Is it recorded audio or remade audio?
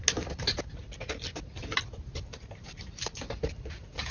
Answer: recorded